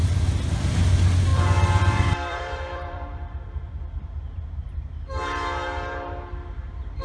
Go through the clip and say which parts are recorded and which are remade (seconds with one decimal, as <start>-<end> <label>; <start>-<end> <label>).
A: 0.0-1.3 recorded; 1.3-4.9 remade; 4.9-7.0 recorded